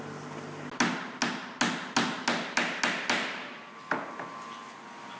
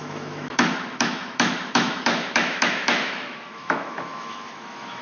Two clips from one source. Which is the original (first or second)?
first